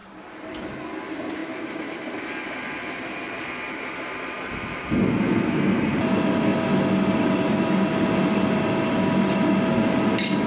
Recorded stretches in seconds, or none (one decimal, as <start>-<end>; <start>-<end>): 0.5-10.5

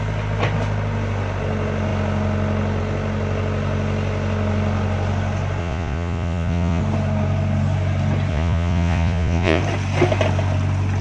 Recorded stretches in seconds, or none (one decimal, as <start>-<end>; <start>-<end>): 0.0-5.6; 6.8-8.3; 9.6-11.0

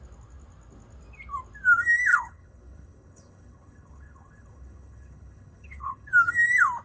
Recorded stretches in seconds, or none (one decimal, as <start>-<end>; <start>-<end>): 0.0-2.1; 6.1-6.8

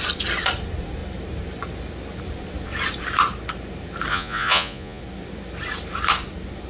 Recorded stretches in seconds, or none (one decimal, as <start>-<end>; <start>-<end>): 0.0-4.1; 5.0-6.7

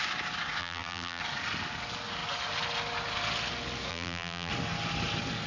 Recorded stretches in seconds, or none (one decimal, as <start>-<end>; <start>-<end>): 0.0-0.6; 1.2-3.9; 4.5-5.5

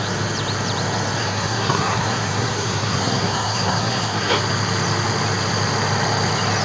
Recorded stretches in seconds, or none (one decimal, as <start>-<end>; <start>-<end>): 0.0-1.2; 4.3-6.6

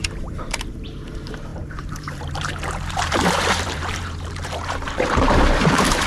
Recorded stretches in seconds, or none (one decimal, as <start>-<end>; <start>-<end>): none

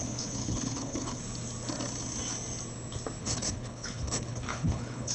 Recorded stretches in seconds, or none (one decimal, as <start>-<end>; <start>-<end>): 1.2-3.2